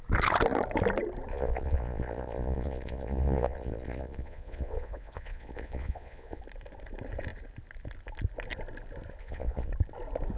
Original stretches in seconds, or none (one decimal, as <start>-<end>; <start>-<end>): 0.0-1.3; 6.4-9.2; 9.7-10.4

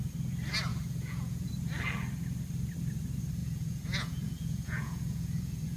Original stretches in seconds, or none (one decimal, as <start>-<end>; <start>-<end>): 0.0-0.7; 1.5-3.4

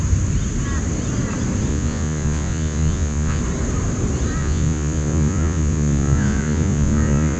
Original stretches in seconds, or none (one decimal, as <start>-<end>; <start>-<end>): 0.0-1.7; 3.4-4.4

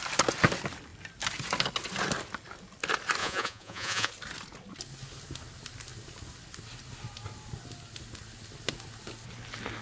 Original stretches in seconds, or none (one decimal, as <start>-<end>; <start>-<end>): 0.0-3.2; 4.1-9.8

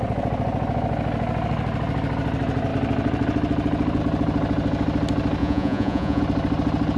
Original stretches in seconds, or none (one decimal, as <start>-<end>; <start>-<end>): 0.0-5.4; 6.2-7.0

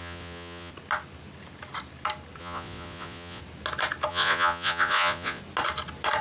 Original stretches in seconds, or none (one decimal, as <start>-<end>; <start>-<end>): 0.7-2.4; 3.4-4.1; 5.4-6.2